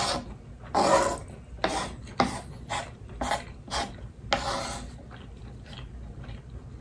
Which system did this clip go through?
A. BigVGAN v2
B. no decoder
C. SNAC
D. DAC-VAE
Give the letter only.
B